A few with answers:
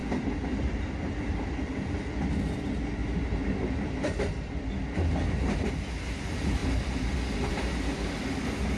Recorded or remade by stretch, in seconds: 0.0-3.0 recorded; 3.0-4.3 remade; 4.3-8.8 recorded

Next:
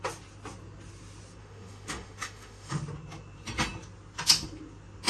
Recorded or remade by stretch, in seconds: 0.0-1.4 recorded; 1.4-2.8 remade; 2.8-5.1 recorded